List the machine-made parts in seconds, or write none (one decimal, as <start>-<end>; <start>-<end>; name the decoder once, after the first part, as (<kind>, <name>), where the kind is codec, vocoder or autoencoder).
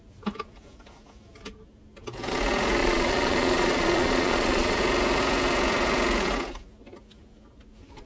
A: 2.8-4.8 (vocoder, Vocos)